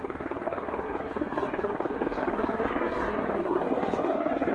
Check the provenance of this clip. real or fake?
fake